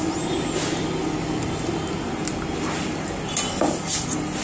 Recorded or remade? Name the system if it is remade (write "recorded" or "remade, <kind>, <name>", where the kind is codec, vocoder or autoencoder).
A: recorded